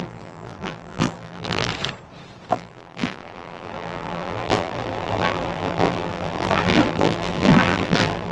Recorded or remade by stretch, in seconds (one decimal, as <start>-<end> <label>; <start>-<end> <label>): 0.0-1.7 remade; 1.7-2.5 recorded; 2.5-8.3 remade